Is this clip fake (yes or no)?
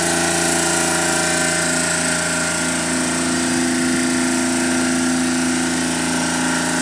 no